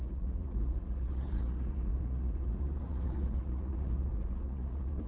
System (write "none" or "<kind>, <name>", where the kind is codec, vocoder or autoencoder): vocoder, Vocos